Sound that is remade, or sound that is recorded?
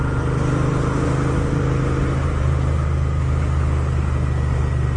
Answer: recorded